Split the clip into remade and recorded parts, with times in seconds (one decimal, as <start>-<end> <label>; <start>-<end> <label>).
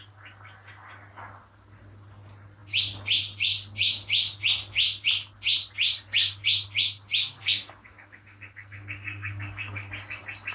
0.0-7.3 recorded; 7.3-9.9 remade; 9.9-10.5 recorded